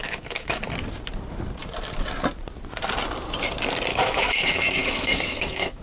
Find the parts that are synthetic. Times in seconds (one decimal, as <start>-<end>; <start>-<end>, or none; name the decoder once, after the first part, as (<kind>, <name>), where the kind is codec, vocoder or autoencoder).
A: 0.0-0.6 (autoencoder, DAC-VAE); 3.9-5.8